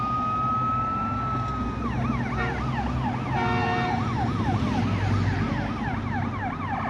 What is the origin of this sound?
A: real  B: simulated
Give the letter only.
A